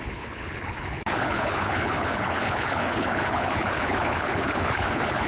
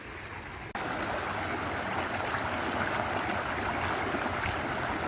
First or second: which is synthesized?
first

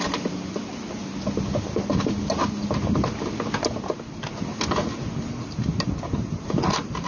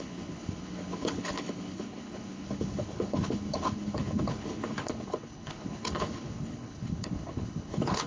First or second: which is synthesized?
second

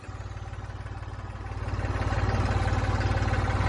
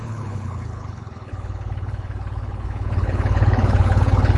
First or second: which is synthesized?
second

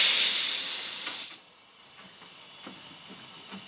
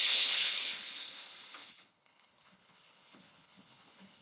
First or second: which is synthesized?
second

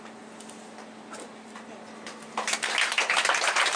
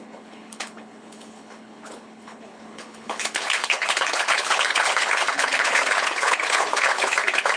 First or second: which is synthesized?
second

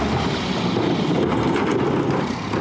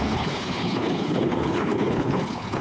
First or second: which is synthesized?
second